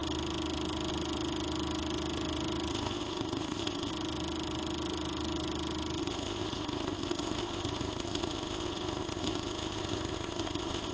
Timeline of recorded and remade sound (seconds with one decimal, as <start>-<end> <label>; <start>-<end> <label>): 0.0-2.7 recorded; 2.7-3.9 remade; 3.9-6.0 recorded; 6.0-10.9 remade